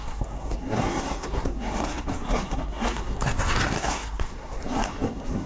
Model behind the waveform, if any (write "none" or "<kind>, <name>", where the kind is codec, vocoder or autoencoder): codec, SNAC